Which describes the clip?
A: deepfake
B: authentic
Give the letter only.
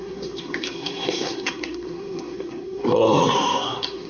A